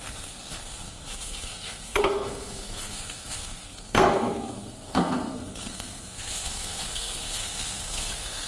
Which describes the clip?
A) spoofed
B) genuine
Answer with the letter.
A